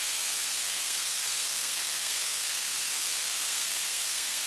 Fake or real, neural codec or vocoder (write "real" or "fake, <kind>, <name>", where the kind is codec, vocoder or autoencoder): fake, codec, SNAC